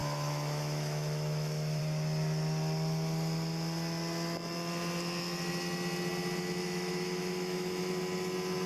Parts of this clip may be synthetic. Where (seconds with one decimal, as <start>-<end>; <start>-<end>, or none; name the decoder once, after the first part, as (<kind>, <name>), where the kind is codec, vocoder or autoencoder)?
0.0-1.8 (autoencoder, DAC-VAE); 6.6-7.9